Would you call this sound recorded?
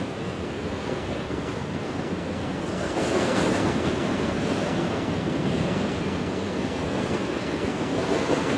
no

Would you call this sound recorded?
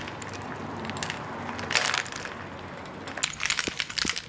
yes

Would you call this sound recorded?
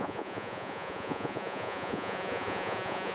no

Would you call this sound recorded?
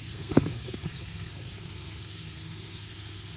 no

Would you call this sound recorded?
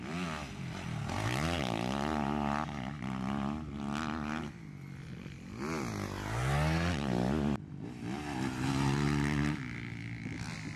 yes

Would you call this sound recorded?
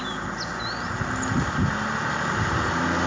yes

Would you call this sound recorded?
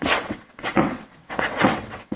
no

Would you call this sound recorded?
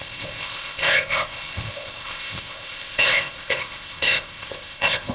no